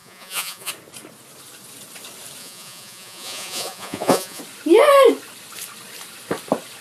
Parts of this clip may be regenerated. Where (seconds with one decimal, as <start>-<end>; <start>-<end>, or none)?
0.0-0.7; 2.4-4.4